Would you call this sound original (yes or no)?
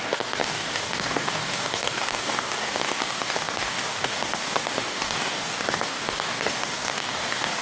no